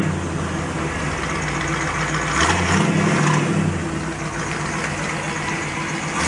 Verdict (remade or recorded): recorded